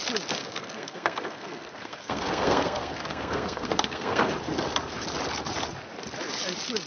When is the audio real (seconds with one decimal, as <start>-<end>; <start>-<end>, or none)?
0.0-0.4; 4.3-6.9